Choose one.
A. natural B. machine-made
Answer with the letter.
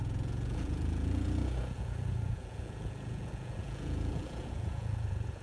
B